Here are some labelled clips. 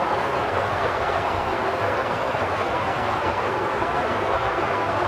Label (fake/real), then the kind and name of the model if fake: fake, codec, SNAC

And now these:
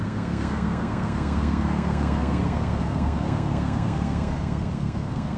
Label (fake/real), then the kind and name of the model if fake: fake, codec, SNAC